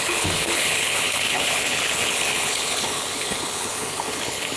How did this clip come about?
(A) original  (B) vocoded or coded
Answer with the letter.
B